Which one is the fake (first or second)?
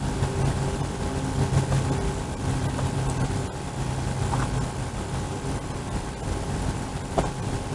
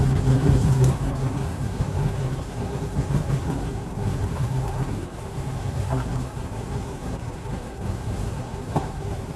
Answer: second